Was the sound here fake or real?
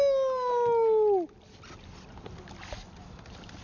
real